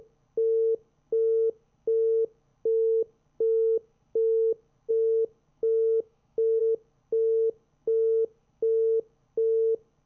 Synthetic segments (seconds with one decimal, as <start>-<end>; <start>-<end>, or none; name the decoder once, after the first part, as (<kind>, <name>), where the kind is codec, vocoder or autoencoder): 5.5-6.6 (autoencoder, DAC-VAE)